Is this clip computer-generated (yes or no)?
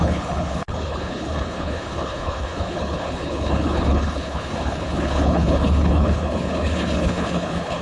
yes